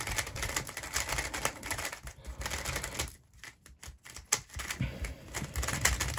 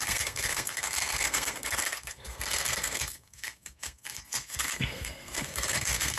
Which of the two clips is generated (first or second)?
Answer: second